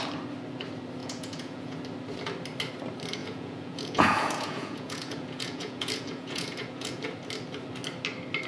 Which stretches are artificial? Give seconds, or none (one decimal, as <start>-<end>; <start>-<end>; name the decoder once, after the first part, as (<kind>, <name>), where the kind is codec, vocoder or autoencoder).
1.0-1.8 (vocoder, Vocos); 3.2-7.0